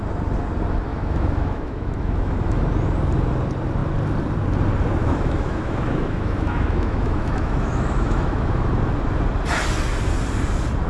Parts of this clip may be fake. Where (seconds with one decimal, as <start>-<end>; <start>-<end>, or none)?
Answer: 0.9-2.6; 5.0-8.7